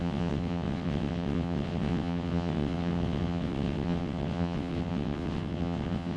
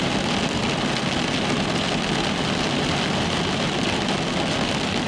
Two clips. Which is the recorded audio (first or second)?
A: second